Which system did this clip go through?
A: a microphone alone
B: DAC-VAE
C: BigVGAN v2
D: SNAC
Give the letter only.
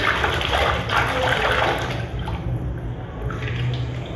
A